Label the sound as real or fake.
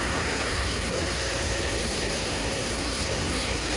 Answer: fake